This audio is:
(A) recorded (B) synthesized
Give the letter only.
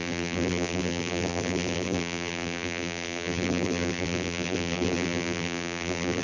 B